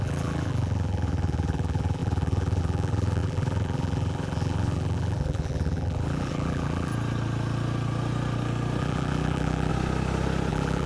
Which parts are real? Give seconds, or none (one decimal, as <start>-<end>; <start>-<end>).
6.9-8.8; 9.7-10.5